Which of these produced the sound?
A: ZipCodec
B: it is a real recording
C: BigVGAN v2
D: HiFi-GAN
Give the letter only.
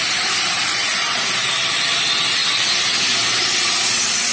B